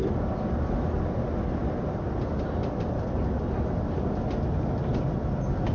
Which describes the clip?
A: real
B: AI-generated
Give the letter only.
A